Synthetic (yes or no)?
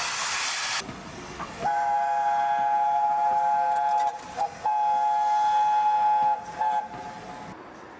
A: no